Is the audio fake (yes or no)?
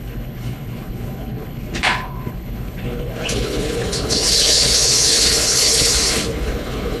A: yes